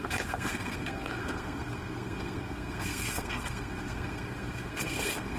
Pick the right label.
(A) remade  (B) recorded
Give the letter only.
A